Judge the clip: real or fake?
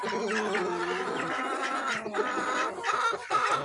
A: real